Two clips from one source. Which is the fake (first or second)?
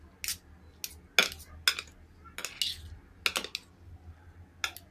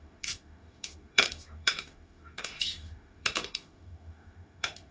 second